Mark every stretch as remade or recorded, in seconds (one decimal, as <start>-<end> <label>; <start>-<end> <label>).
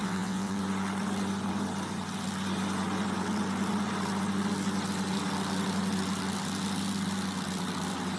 0.0-0.6 remade; 0.6-8.2 recorded